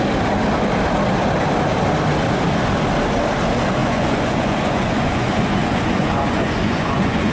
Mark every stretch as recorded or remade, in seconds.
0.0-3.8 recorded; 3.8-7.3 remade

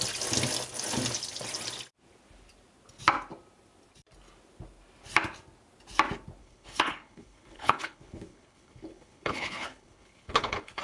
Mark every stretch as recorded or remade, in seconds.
0.0-6.4 recorded; 6.4-10.8 remade

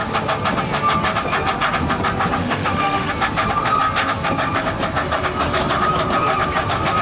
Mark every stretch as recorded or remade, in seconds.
0.0-2.4 recorded; 2.4-3.1 remade; 3.1-7.0 recorded

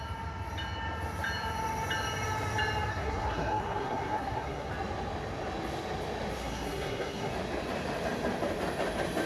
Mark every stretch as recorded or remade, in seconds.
0.0-2.9 recorded; 2.9-4.7 remade; 4.7-6.4 recorded; 6.4-7.3 remade; 7.3-9.3 recorded

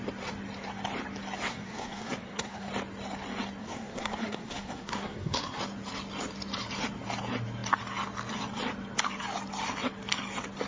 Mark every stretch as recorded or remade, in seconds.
0.0-1.5 recorded; 1.5-2.7 remade; 2.7-3.6 recorded; 3.6-5.6 remade; 5.6-10.7 recorded

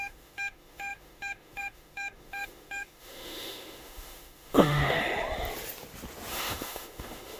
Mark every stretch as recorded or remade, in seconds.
0.0-5.0 remade; 5.0-6.3 recorded; 6.3-7.4 remade

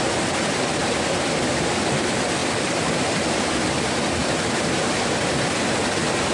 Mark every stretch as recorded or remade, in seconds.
0.0-2.4 recorded; 2.4-3.6 remade; 3.6-4.2 recorded; 4.2-6.3 remade